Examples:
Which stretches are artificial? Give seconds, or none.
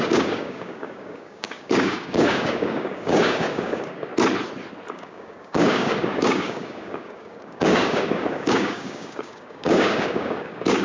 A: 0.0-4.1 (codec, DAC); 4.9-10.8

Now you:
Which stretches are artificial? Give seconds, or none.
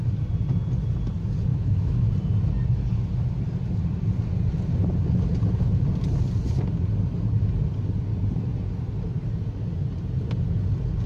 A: 1.5-2.1 (autoencoder, DAC-VAE)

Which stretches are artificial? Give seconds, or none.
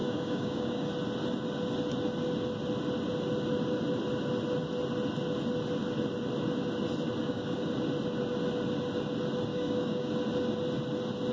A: 0.0-0.9 (codec, DAC); 7.2-7.7; 9.5-10.1